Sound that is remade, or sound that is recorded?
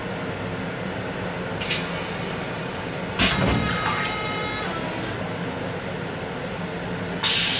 recorded